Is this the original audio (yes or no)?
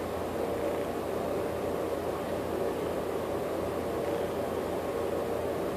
yes